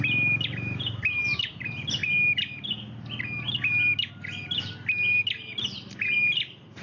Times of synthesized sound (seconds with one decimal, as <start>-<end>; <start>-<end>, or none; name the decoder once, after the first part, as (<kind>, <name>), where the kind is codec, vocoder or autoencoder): none